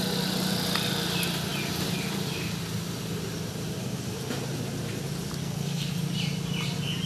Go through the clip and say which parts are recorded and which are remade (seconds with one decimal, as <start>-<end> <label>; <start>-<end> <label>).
0.0-5.4 recorded; 5.4-5.9 remade; 5.9-7.1 recorded